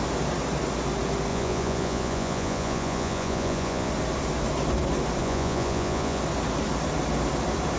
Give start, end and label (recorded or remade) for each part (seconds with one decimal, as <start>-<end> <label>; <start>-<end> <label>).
0.0-1.3 recorded; 1.3-3.9 remade; 3.9-5.2 recorded; 5.2-6.2 remade; 6.2-7.8 recorded